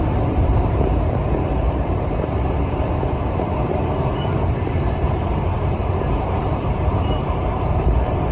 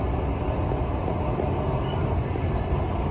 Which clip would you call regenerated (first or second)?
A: first